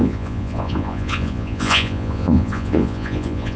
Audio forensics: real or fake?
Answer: fake